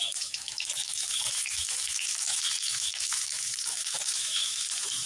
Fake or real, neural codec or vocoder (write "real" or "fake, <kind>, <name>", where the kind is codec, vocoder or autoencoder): fake, autoencoder, DAC-VAE